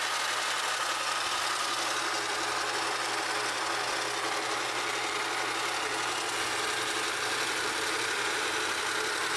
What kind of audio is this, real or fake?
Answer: real